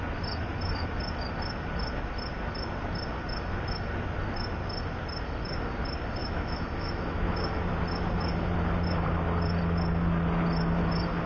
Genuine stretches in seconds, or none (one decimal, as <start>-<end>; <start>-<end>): 0.0-6.2; 7.6-11.3